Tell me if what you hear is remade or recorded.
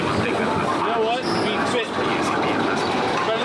recorded